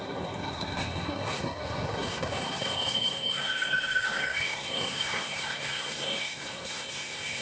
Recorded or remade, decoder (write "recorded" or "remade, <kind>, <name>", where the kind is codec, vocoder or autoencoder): remade, codec, SNAC